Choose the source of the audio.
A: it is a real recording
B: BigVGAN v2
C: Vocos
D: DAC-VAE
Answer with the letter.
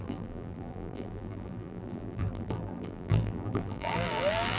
B